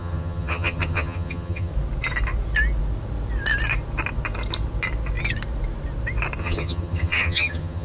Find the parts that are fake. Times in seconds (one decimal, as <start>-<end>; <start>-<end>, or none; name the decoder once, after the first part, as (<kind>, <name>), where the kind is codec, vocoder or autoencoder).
0.0-1.7 (vocoder, HiFi-GAN); 6.4-7.8